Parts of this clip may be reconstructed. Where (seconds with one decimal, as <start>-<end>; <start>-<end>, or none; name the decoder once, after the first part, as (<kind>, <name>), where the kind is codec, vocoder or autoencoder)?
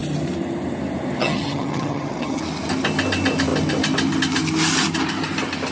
1.2-2.4 (vocoder, HiFi-GAN)